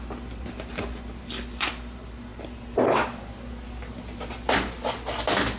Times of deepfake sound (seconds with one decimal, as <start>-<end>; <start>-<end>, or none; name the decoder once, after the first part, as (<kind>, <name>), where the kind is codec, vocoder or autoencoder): none